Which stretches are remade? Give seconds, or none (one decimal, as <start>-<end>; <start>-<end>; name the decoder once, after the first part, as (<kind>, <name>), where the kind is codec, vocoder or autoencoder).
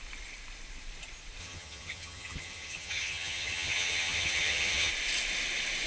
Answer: 1.4-4.9 (vocoder, HiFi-GAN)